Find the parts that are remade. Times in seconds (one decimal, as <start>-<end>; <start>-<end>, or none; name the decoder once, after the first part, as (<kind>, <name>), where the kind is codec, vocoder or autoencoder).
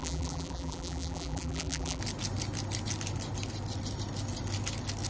0.0-2.0 (vocoder, BigVGAN v2)